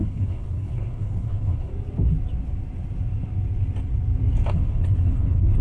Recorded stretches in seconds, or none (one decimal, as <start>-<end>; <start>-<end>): 1.7-4.5